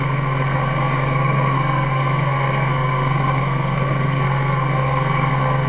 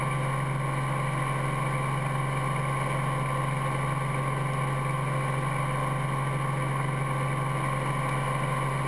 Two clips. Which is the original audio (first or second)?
second